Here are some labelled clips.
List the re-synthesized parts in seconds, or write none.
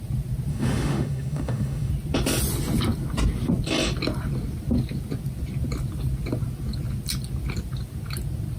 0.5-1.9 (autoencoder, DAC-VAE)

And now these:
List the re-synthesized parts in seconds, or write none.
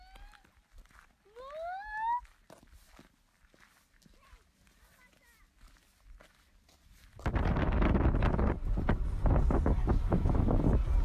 9.8-10.6 (autoencoder, DAC-VAE)